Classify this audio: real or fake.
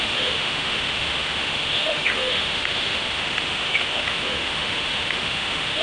fake